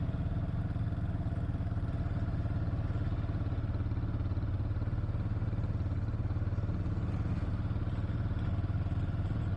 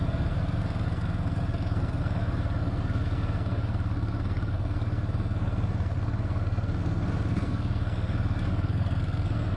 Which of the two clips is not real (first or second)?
second